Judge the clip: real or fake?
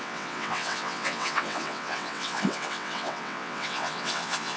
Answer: fake